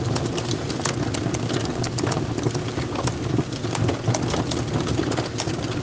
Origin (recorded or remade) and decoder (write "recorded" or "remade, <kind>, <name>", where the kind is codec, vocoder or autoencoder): recorded